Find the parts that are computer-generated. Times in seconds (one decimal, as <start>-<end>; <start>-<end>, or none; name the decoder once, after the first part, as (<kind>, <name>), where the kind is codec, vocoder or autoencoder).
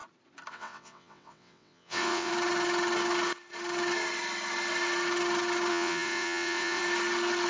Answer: 0.5-2.3 (vocoder, WaveNeXt); 5.7-6.8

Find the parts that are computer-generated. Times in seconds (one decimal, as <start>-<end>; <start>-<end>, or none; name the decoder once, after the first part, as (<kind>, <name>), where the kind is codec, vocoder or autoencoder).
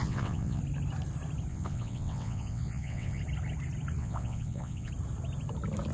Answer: 0.0-0.6 (vocoder, WaveNeXt); 1.5-3.2; 4.0-4.9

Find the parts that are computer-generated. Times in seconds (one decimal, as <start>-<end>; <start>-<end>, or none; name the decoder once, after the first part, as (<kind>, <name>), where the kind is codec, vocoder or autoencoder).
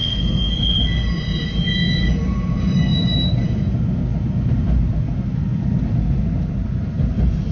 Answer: 0.0-0.5 (codec, SNAC)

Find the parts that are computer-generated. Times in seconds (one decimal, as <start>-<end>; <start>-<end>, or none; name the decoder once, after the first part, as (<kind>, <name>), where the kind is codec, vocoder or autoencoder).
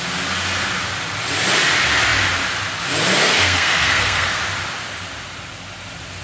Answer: 3.2-4.4 (codec, SNAC)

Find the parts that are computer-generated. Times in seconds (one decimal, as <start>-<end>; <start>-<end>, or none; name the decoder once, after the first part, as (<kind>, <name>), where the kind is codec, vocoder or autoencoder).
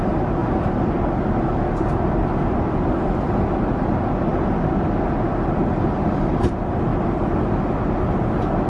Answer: none